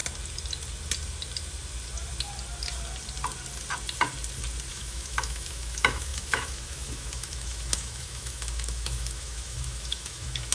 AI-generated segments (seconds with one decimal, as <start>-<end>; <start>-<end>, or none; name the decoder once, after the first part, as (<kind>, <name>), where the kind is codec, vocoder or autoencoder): 4.7-10.5 (autoencoder, DAC-VAE)